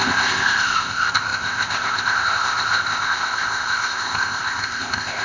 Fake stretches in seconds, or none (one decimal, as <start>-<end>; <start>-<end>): 0.0-5.2